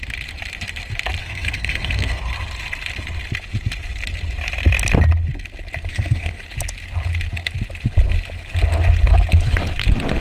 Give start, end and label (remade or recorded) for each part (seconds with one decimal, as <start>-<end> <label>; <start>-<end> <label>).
0.0-1.2 recorded; 1.2-2.2 remade; 2.2-5.9 recorded; 5.9-6.4 remade; 6.4-10.2 recorded